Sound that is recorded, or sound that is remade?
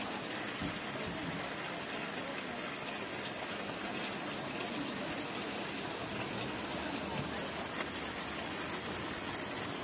recorded